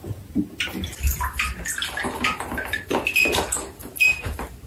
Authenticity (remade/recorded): recorded